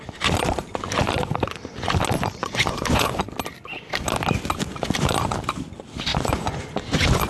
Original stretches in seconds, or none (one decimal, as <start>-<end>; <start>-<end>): 0.0-2.4; 3.2-6.1